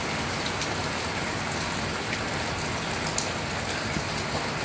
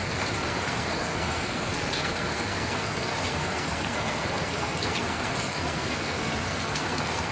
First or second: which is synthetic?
second